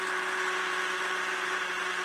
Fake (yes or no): yes